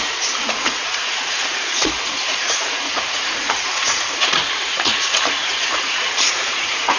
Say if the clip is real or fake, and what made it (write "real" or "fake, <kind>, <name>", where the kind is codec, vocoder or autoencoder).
fake, vocoder, Vocos